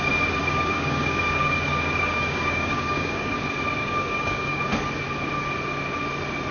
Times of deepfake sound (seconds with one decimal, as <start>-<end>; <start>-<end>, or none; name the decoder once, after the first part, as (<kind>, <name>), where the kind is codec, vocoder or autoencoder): 0.4-3.4 (codec, DAC); 3.8-4.6